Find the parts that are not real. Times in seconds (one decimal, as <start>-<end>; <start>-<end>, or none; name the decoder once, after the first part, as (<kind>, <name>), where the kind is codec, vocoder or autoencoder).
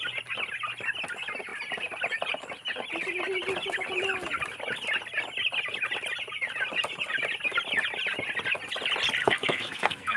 9.2-10.2 (codec, SNAC)